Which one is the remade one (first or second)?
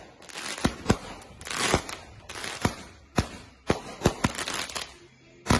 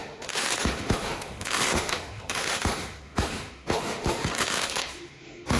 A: second